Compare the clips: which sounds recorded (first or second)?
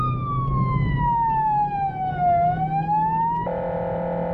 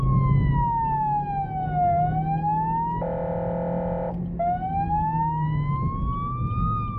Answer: second